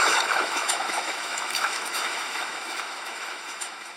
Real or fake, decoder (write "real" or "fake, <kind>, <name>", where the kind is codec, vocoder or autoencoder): fake, autoencoder, DAC-VAE